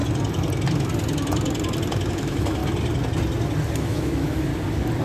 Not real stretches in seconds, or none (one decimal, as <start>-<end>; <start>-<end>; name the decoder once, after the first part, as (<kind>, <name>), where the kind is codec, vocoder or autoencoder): 2.1-2.6 (autoencoder, DAC-VAE); 3.8-4.5